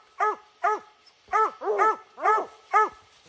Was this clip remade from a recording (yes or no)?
no